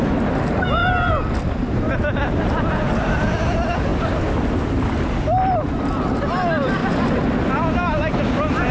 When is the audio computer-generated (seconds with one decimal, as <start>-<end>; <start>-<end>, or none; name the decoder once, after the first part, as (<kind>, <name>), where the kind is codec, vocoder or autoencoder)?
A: none